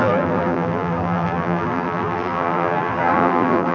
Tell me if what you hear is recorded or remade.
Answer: remade